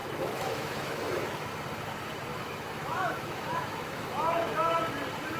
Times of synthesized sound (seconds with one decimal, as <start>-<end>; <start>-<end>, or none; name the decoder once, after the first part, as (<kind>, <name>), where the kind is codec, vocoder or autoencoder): 0.0-1.5 (autoencoder, DAC-VAE); 2.3-4.8